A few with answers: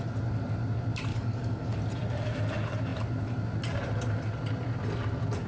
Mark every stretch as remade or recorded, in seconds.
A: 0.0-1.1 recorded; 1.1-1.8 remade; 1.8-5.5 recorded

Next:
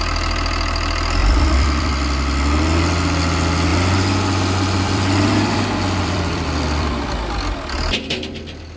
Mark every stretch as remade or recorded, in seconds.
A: 0.0-1.2 recorded; 1.2-1.9 remade; 1.9-3.7 recorded; 3.7-7.0 remade; 7.0-8.8 recorded